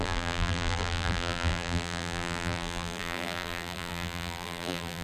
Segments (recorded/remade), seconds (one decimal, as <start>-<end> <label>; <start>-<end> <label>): 0.0-5.0 remade